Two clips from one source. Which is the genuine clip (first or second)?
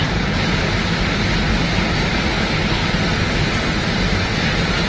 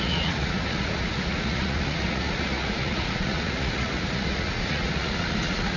first